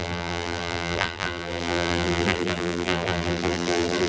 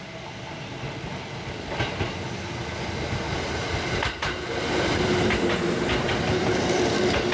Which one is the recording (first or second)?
second